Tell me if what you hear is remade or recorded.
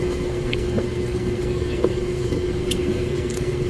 remade